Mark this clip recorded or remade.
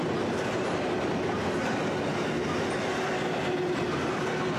recorded